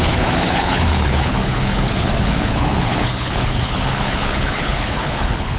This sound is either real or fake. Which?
fake